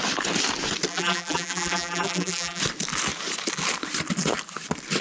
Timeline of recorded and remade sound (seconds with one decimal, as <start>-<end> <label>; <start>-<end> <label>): 0.0-0.9 recorded; 0.9-2.6 remade; 2.6-5.0 recorded